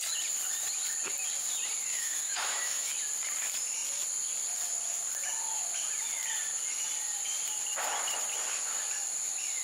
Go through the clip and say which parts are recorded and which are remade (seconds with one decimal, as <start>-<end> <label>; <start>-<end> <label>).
0.0-1.9 recorded; 1.9-2.9 remade; 2.9-9.6 recorded